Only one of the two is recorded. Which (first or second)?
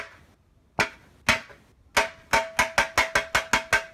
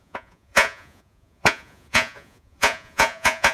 first